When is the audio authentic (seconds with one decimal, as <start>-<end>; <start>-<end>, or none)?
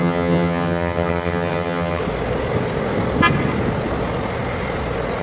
2.0-5.2